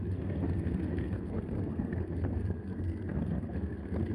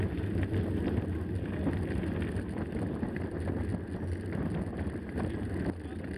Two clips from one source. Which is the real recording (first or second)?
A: second